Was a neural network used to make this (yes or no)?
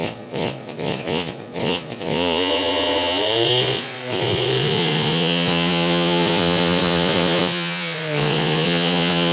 yes